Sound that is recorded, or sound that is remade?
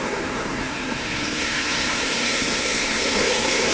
remade